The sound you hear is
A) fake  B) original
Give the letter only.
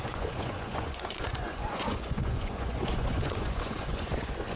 A